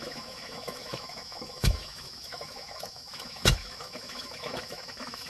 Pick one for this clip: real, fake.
fake